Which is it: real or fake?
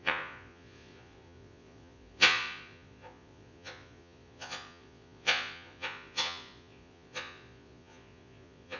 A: fake